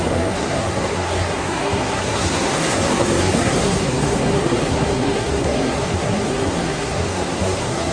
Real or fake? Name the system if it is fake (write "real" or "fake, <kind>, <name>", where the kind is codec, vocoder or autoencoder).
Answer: fake, codec, SNAC